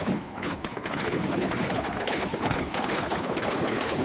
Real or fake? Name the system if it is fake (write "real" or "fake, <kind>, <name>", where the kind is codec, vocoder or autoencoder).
fake, codec, HILCodec